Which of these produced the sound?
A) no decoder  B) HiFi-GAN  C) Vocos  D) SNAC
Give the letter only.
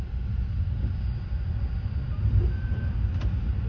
A